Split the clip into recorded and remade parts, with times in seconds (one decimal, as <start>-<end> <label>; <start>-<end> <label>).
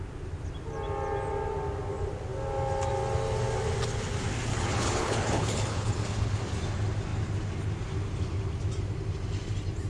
0.0-4.5 recorded; 4.5-6.4 remade; 6.4-9.9 recorded